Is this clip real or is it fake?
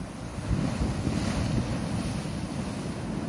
real